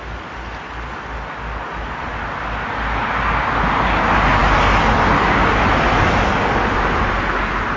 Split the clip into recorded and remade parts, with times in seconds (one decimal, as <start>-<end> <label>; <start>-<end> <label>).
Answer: 0.0-7.8 recorded